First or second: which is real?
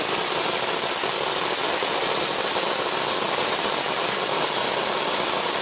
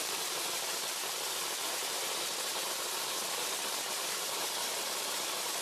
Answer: first